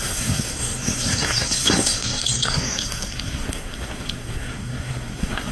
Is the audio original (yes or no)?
no